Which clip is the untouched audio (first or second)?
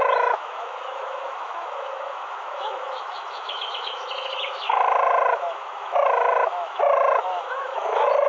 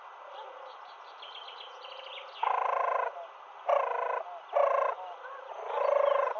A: second